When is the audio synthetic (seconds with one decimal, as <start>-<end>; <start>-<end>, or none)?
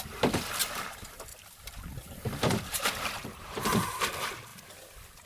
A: 1.3-4.0